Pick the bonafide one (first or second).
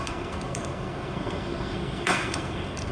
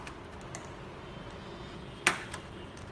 second